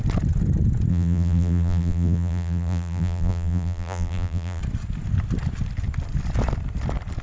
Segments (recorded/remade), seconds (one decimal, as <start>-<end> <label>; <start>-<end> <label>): 0.0-0.9 recorded; 0.9-4.6 remade; 4.6-7.2 recorded